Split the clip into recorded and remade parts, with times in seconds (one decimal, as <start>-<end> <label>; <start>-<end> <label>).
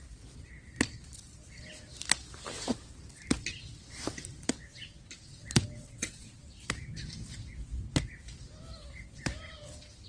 0.0-5.8 recorded; 5.8-6.4 remade; 6.4-10.1 recorded